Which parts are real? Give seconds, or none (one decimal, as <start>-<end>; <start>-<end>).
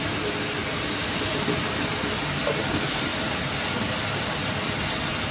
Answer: 0.0-5.3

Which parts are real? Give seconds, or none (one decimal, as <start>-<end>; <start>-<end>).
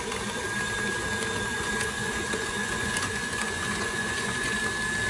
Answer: 0.0-1.5; 4.6-5.1